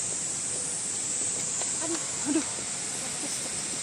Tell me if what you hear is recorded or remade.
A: recorded